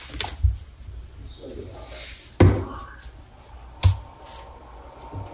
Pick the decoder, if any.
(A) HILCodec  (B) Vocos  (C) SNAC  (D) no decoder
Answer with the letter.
D